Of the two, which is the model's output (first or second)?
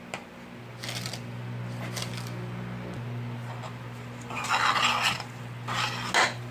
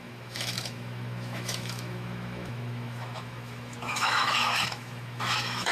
second